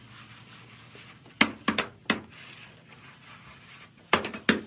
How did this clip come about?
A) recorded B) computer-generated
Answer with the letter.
A